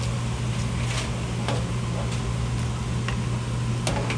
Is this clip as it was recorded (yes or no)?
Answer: yes